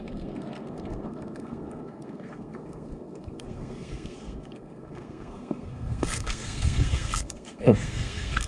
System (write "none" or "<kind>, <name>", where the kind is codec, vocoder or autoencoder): codec, SNAC